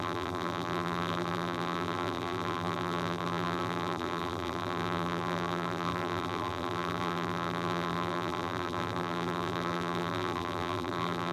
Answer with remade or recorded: remade